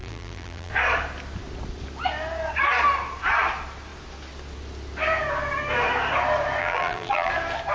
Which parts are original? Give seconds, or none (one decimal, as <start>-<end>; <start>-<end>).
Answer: 0.7-6.6; 7.3-7.7